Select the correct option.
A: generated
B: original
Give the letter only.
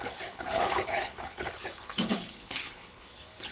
A